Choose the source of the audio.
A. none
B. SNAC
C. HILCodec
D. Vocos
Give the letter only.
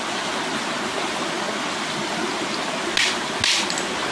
A